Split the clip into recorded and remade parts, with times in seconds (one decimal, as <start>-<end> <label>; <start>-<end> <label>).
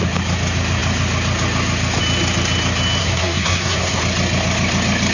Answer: 0.0-3.0 recorded; 3.0-4.0 remade; 4.0-5.1 recorded